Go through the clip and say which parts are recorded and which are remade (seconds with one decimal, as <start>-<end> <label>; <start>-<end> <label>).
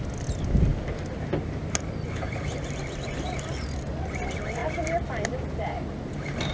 0.0-6.5 recorded